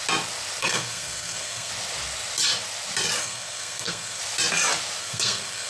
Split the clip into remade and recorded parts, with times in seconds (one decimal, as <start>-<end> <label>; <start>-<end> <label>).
0.0-0.6 recorded; 0.6-1.7 remade; 1.7-3.2 recorded; 3.2-4.2 remade; 4.2-5.0 recorded; 5.0-5.7 remade